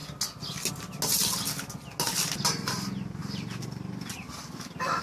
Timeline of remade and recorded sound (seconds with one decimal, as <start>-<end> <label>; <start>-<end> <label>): 0.0-5.0 recorded